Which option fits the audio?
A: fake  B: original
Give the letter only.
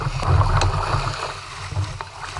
B